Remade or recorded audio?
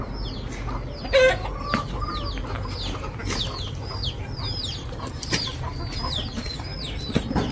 recorded